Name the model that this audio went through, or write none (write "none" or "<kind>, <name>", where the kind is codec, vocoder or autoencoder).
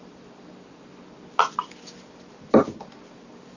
none